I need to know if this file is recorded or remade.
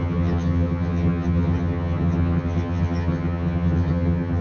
remade